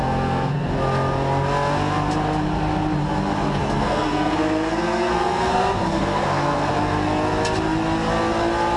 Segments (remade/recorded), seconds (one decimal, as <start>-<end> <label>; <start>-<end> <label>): 0.0-0.7 remade; 0.7-3.6 recorded; 3.6-6.7 remade; 6.7-8.8 recorded